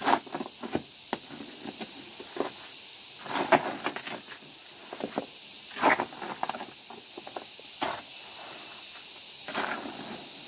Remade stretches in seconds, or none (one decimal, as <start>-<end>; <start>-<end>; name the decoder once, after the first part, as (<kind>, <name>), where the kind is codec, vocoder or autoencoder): none